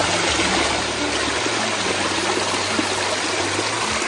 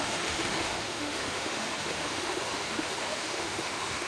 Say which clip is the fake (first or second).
second